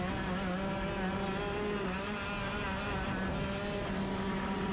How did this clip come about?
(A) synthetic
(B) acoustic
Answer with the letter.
B